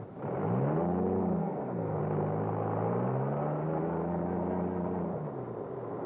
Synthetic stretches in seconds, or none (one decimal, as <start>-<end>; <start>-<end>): 1.4-2.0